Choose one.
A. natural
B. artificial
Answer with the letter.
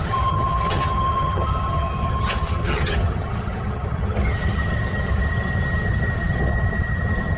B